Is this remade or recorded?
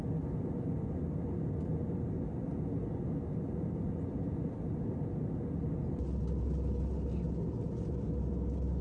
recorded